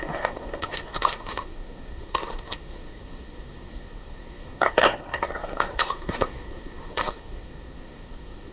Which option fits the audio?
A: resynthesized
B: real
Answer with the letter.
A